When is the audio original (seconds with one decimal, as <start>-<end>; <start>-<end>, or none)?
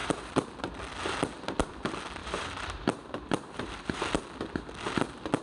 0.8-2.2; 4.0-5.4